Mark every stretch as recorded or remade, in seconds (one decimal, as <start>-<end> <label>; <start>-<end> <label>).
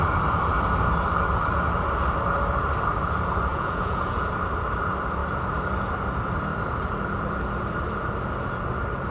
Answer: 0.0-3.5 recorded; 3.5-4.3 remade; 4.3-9.1 recorded